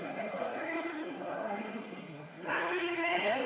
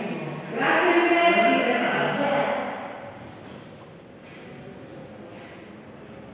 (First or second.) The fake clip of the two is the first